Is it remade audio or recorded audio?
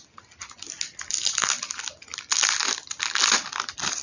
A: recorded